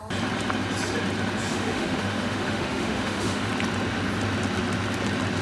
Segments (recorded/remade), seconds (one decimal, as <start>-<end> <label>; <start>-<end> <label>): 0.0-1.5 recorded; 1.5-3.5 remade; 3.5-5.4 recorded